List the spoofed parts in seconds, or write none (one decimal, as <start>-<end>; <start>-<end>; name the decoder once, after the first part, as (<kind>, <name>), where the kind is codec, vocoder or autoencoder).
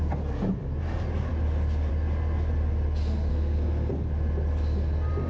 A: 3.3-3.9 (codec, SNAC)